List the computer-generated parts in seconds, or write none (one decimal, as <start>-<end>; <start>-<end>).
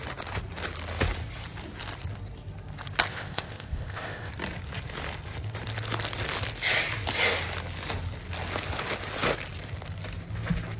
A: 3.1-4.3